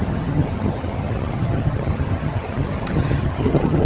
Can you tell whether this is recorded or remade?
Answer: remade